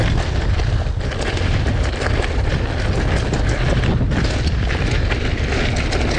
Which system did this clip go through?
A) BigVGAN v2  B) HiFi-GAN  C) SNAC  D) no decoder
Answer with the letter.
D